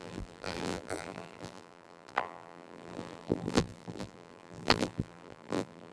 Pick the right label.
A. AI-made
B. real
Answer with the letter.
A